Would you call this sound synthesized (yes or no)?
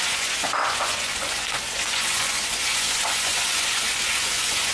yes